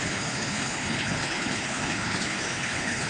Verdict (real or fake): fake